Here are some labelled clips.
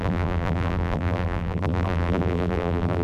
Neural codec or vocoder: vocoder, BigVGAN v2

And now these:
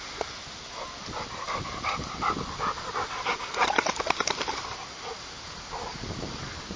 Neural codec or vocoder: vocoder, BigVGAN v2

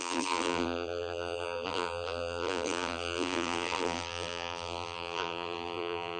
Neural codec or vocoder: vocoder, BigVGAN v2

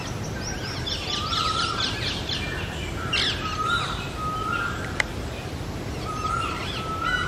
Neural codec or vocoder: none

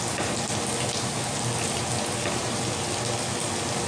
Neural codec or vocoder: none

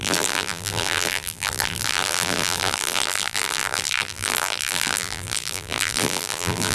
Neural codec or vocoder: vocoder, BigVGAN v2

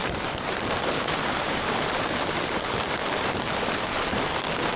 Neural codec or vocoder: vocoder, BigVGAN v2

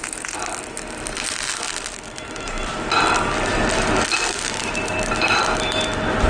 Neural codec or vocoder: none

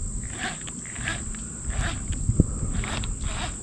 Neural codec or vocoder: none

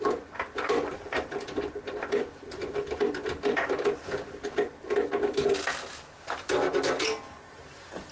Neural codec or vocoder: none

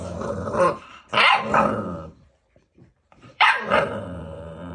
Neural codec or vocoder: vocoder, BigVGAN v2